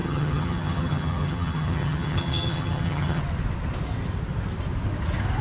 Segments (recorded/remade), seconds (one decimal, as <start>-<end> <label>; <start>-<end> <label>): 0.0-3.2 remade; 3.2-5.4 recorded